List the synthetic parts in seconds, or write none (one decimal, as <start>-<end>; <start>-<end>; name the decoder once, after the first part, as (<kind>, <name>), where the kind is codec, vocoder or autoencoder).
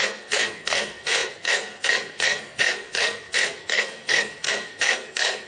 0.0-5.5 (codec, SNAC)